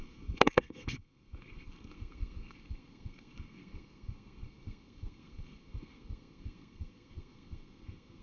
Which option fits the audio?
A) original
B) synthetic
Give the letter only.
B